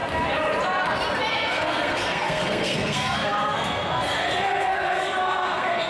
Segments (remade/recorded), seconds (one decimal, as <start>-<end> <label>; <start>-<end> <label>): 0.0-1.3 recorded; 1.3-5.9 remade

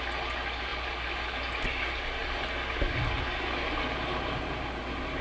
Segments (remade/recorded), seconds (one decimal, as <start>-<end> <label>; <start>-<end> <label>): 0.0-5.2 recorded

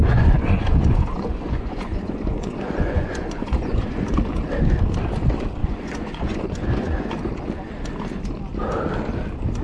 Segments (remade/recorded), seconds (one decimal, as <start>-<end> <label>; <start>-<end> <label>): 0.0-4.1 remade; 4.1-5.6 recorded; 5.6-7.1 remade; 7.1-9.6 recorded

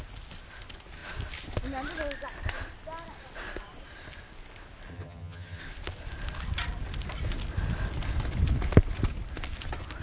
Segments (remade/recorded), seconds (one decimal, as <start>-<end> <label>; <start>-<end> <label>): 0.0-4.9 recorded; 4.9-5.6 remade; 5.6-10.0 recorded

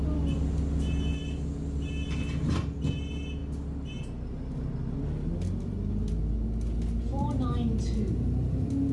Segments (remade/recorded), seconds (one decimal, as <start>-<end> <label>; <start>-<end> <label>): 0.0-8.9 recorded